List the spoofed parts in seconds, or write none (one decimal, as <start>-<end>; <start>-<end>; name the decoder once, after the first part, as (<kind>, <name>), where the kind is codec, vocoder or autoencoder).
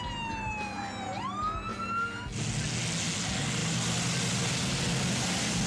none